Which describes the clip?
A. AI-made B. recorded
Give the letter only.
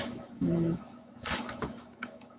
A